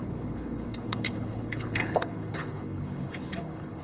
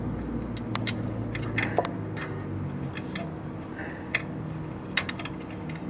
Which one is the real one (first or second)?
second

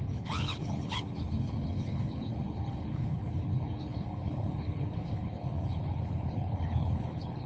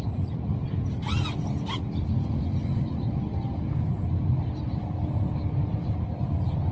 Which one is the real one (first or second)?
second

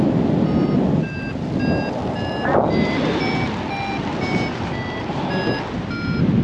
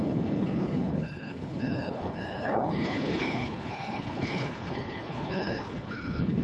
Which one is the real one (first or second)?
first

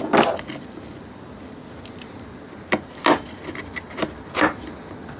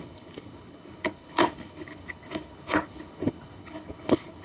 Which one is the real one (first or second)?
first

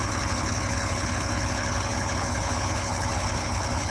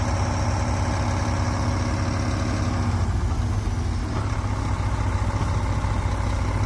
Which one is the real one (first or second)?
second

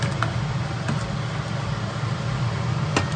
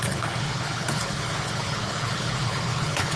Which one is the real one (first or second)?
first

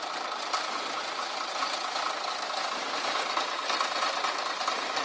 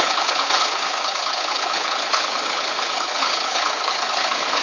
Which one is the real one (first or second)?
first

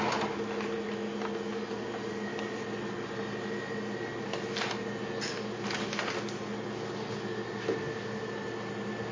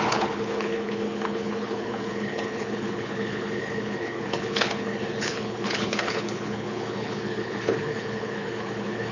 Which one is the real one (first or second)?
first